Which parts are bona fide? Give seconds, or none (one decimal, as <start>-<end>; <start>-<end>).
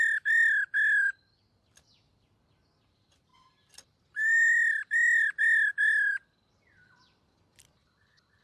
0.0-8.4